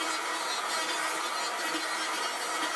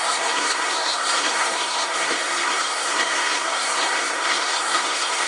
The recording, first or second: first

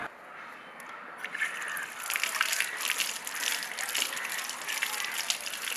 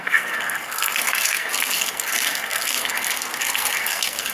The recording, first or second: first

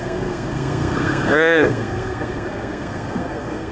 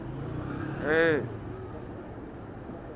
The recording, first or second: second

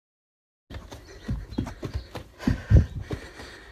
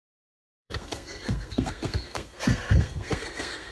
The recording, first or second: first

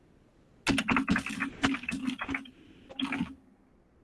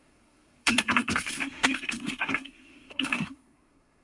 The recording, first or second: first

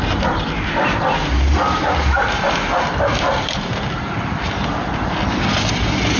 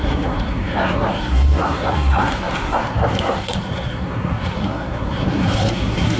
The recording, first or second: first